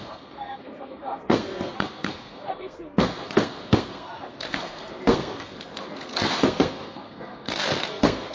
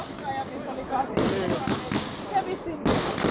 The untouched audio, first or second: second